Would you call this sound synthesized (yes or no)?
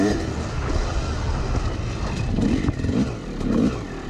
no